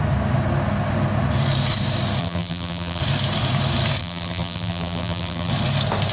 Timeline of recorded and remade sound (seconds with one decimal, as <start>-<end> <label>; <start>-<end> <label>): 0.0-2.2 recorded; 2.2-3.0 remade; 3.0-4.0 recorded; 4.0-5.5 remade; 5.5-6.1 recorded